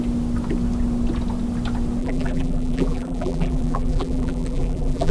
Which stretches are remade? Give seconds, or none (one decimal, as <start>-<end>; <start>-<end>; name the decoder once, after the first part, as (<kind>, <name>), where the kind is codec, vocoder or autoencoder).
2.0-5.1 (vocoder, BigVGAN v2)